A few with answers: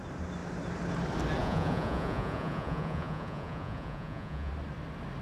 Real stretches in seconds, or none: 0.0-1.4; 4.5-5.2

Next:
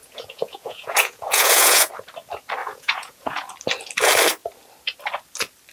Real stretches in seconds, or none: 1.9-2.6; 3.5-5.7

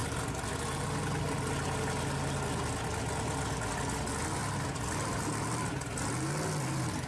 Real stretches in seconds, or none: 0.0-7.1

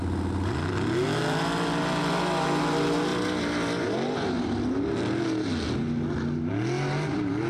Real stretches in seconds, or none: 0.0-7.5

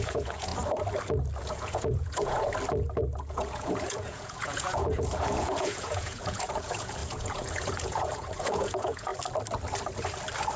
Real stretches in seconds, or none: 0.5-1.4; 2.5-3.3; 9.1-10.6

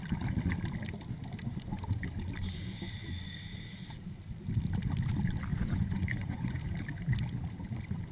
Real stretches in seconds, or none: 0.0-5.5; 6.6-8.1

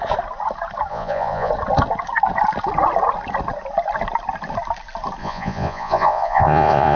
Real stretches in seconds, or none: 0.0-0.9; 1.5-5.2